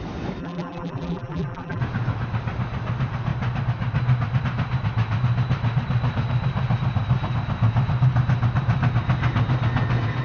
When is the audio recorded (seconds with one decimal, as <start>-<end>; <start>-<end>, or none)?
0.0-0.4; 1.8-10.2